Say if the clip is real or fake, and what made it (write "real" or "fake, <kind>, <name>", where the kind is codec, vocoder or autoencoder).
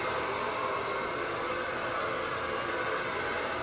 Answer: real